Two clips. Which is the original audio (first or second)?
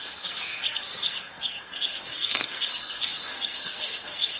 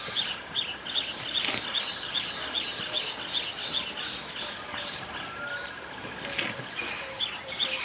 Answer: second